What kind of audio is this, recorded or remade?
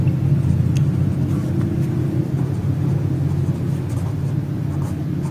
recorded